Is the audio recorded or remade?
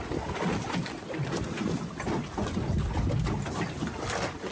recorded